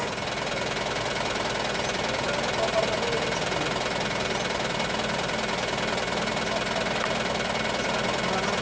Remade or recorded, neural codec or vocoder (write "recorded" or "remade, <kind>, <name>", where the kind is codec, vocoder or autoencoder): recorded